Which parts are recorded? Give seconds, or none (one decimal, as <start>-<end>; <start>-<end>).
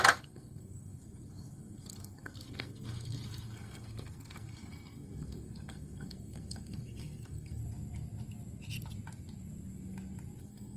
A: 7.6-10.4